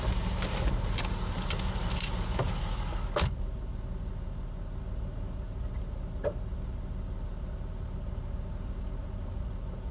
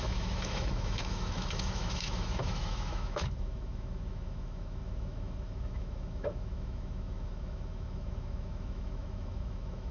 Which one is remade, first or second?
second